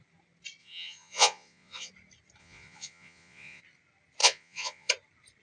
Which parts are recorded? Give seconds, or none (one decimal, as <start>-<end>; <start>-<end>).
0.0-0.6; 1.9-2.4; 3.6-4.2; 4.9-5.4